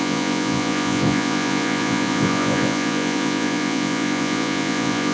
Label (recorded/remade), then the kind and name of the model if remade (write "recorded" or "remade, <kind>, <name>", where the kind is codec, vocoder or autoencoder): remade, vocoder, Vocos